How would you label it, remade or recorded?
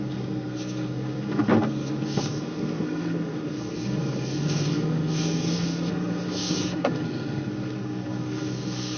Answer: remade